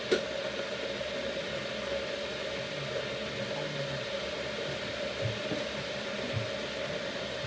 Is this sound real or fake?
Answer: real